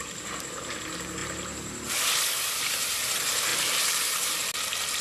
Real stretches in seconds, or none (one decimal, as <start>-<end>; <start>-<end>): 0.0-3.5; 4.5-5.0